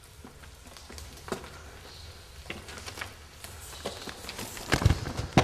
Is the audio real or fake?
real